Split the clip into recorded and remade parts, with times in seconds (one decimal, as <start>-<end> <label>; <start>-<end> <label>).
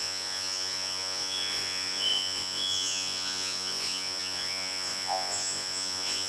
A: 0.0-6.3 remade